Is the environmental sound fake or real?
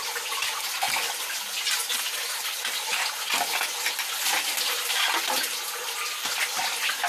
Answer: fake